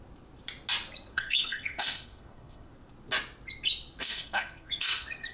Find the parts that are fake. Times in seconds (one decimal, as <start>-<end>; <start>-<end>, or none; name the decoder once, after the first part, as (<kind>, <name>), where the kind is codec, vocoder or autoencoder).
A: 1.1-2.7 (codec, SNAC); 4.0-5.3